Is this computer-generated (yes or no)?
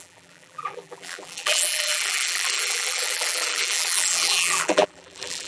yes